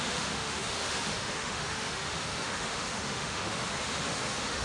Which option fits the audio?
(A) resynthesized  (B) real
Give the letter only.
A